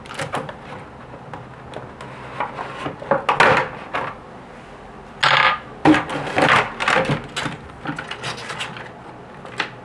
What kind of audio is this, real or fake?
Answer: real